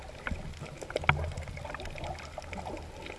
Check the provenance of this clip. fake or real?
real